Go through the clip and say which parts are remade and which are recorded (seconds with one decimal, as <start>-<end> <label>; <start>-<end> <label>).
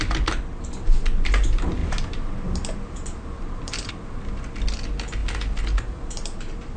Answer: 0.0-1.8 recorded; 1.8-3.9 remade; 3.9-5.2 recorded; 5.2-6.8 remade